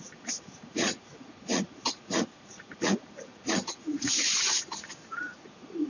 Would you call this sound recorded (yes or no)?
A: no